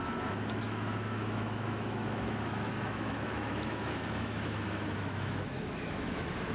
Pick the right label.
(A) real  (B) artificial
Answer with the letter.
B